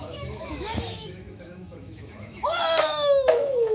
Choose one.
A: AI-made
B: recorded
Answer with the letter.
A